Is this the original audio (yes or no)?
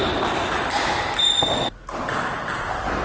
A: yes